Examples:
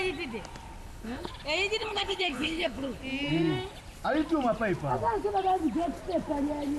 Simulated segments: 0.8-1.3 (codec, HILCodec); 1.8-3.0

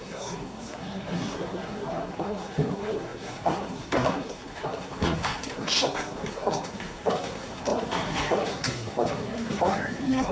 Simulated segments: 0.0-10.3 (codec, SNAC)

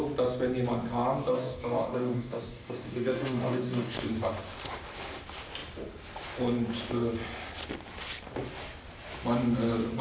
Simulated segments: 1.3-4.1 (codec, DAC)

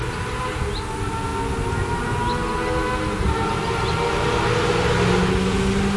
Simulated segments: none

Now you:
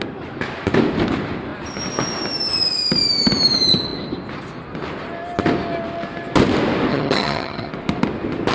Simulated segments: 6.9-7.7 (vocoder, HiFi-GAN)

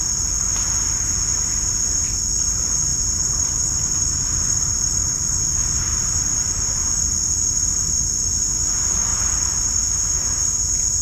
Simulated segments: 2.9-5.4 (vocoder, BigVGAN v2); 9.1-9.7

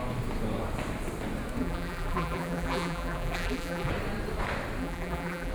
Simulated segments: 1.6-3.9 (vocoder, BigVGAN v2); 4.8-5.5

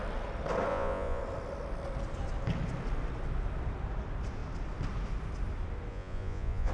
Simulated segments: 0.7-1.2 (vocoder, Vocos); 5.9-6.7